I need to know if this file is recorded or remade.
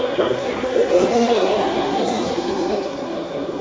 remade